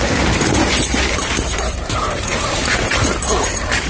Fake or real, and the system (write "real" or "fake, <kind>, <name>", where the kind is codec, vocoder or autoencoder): fake, vocoder, BigVGAN v2